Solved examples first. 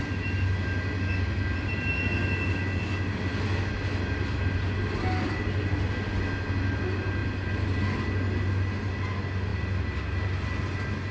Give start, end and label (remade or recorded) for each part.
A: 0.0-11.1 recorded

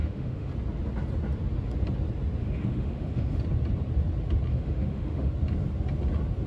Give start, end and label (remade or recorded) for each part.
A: 0.0-0.5 remade; 0.5-2.4 recorded; 2.4-3.4 remade; 3.4-4.5 recorded; 4.5-5.3 remade; 5.3-6.5 recorded

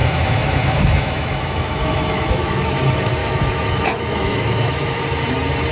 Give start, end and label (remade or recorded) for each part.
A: 0.0-2.8 remade; 2.8-3.2 recorded; 3.2-5.0 remade; 5.0-5.7 recorded

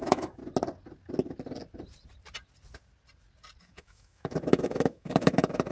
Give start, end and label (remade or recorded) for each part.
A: 0.0-0.4 remade; 0.4-3.6 recorded; 3.6-5.7 remade

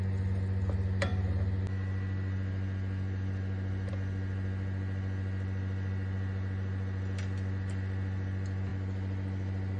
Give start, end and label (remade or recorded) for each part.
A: 0.0-9.8 recorded